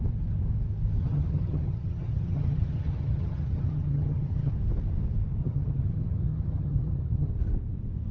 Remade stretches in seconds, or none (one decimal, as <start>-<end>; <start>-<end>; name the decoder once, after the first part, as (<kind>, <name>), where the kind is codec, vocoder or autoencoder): 1.0-4.5 (vocoder, HiFi-GAN); 5.4-7.3